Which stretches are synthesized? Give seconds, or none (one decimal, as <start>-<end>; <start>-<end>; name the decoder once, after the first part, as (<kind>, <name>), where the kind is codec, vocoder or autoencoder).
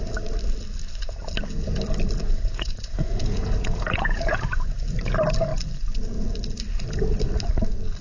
2.2-4.8 (vocoder, Vocos)